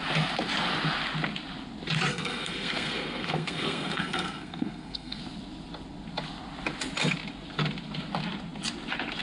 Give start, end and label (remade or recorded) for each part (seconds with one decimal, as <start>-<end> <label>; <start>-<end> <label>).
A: 0.0-2.1 recorded; 2.1-5.2 remade; 5.2-9.2 recorded